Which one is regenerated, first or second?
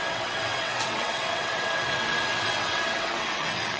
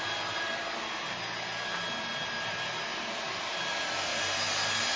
first